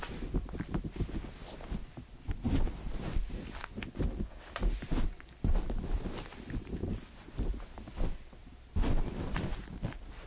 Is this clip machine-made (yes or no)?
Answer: no